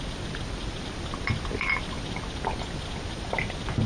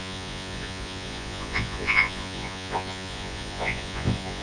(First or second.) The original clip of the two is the first